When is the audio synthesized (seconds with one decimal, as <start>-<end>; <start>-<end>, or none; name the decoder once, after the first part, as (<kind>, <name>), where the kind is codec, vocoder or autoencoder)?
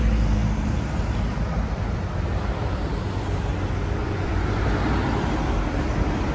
4.0-4.6 (vocoder, Vocos)